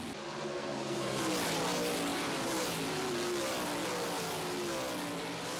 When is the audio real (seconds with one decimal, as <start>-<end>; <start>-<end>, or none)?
0.0-0.5; 1.2-5.6